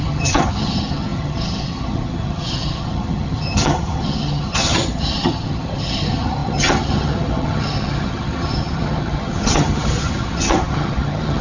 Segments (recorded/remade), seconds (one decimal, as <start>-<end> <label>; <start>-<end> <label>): 0.0-11.4 remade